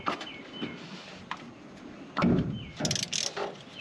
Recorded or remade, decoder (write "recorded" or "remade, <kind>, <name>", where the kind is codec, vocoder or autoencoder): recorded